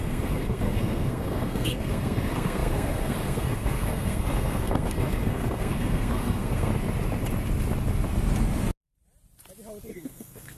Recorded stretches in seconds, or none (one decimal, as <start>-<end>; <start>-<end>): 6.7-9.9